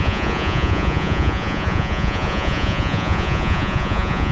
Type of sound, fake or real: fake